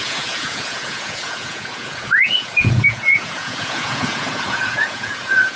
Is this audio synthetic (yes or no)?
yes